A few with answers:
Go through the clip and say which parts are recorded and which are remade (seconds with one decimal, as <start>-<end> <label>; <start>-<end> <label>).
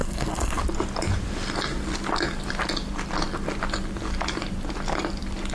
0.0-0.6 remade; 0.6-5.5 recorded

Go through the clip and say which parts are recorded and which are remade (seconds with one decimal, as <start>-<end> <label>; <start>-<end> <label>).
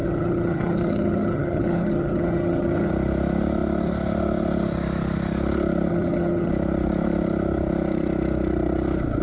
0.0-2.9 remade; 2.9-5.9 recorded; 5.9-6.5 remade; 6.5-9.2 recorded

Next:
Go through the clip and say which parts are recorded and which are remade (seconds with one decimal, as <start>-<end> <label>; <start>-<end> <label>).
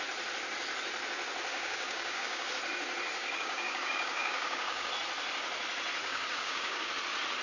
0.0-1.5 recorded; 1.5-2.5 remade; 2.5-3.2 recorded; 3.2-4.9 remade; 4.9-6.0 recorded; 6.0-6.9 remade; 6.9-7.4 recorded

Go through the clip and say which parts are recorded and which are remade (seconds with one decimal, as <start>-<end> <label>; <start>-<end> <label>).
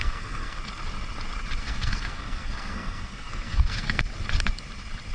0.0-0.6 remade; 0.6-1.6 recorded; 1.6-4.0 remade; 4.0-5.1 recorded